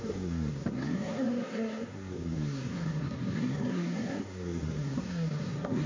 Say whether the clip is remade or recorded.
remade